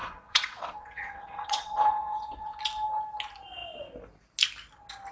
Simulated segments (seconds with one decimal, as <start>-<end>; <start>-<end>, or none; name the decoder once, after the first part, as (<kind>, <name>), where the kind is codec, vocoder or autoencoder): 0.0-2.6 (vocoder, WaveNeXt)